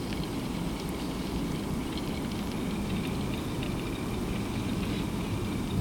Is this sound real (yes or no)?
yes